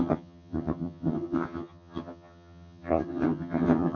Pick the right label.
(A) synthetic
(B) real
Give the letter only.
A